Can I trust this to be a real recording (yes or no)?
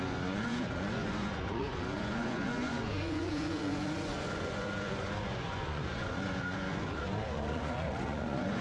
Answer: no